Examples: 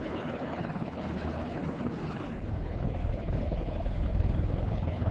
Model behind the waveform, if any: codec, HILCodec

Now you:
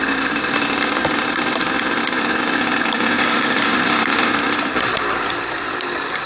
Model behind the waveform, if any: vocoder, BigVGAN v2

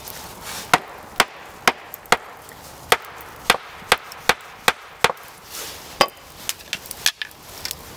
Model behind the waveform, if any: none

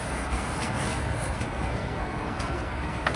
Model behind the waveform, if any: codec, SNAC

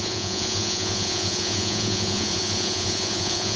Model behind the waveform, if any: vocoder, Vocos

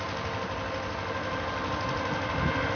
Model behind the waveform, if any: none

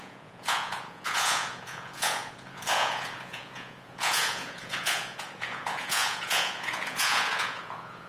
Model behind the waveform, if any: vocoder, Vocos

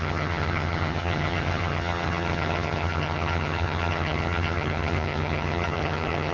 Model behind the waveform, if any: vocoder, HiFi-GAN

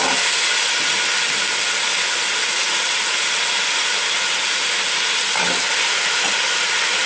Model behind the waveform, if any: none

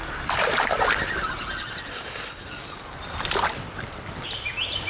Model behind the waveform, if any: none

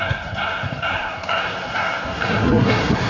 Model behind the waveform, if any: codec, SNAC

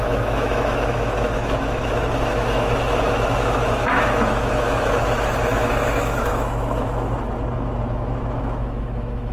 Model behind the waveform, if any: autoencoder, DAC-VAE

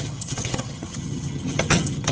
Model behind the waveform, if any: vocoder, HiFi-GAN